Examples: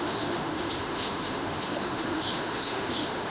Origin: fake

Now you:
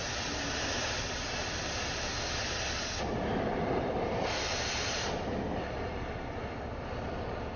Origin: real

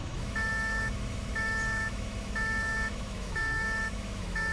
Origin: fake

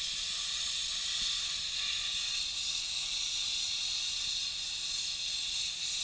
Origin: real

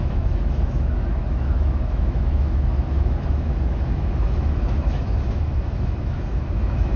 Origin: fake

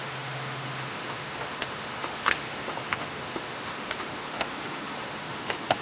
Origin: fake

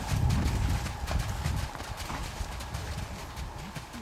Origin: real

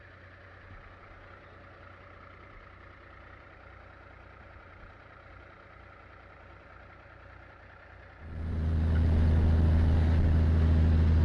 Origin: real